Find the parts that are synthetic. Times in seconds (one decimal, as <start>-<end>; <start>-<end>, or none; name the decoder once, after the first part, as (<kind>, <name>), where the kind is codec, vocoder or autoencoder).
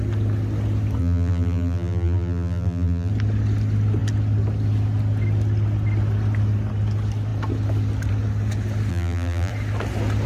1.0-3.1 (vocoder, BigVGAN v2); 8.9-9.5